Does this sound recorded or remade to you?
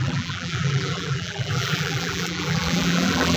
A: remade